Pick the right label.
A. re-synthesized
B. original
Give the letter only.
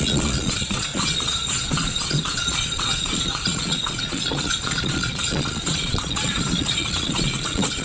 A